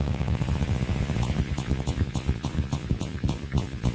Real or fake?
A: fake